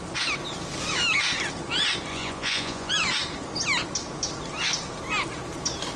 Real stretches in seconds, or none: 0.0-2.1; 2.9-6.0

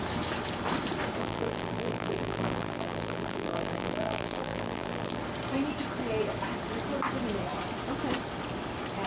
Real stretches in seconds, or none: 0.0-1.2; 5.2-9.1

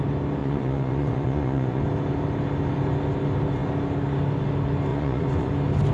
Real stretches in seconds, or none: 0.0-0.4; 1.8-4.9; 5.5-5.9

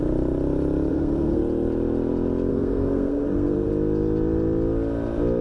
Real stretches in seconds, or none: 0.0-0.9; 1.4-2.5; 3.7-5.4

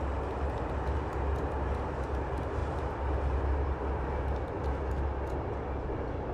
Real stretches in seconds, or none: 0.0-6.3